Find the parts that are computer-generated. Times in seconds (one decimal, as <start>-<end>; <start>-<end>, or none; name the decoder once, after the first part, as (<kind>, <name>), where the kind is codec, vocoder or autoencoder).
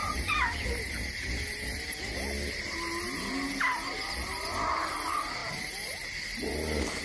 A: 0.0-2.0 (vocoder, BigVGAN v2)